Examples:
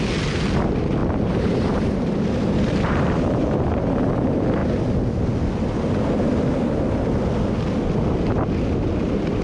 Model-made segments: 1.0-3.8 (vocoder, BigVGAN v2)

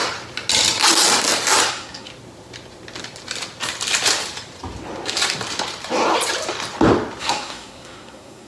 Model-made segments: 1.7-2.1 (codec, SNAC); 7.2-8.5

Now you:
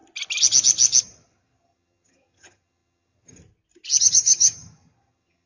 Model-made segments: 1.0-3.4 (vocoder, HiFi-GAN); 4.0-5.5

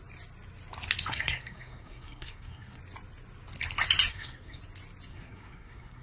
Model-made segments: 1.1-2.8 (codec, SNAC); 4.1-4.6; 5.1-6.0

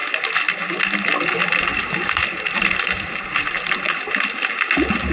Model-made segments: 1.4-4.5 (vocoder, BigVGAN v2)